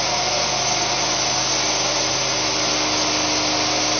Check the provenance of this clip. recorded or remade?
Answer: recorded